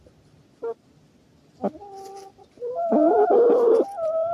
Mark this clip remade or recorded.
recorded